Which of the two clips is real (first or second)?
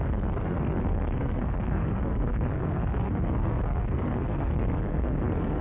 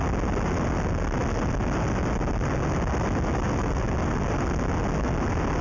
second